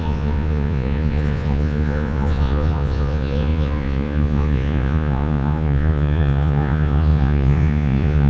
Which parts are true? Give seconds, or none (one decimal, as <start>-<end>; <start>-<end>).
none